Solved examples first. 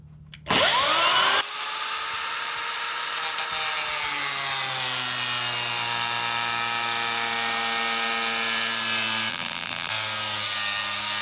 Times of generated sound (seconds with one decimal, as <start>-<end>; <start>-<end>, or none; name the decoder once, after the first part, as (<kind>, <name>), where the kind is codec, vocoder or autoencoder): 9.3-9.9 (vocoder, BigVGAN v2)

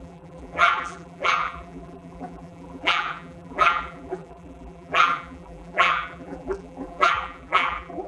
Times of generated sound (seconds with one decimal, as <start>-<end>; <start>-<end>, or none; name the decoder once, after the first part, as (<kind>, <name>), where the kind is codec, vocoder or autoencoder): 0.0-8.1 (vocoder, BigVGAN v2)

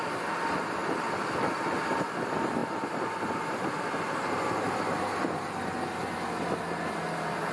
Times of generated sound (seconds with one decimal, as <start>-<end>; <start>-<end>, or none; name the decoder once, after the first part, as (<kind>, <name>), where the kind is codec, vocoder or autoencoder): none